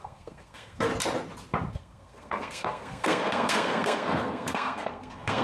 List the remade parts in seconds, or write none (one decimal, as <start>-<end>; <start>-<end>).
0.0-0.9; 1.7-5.4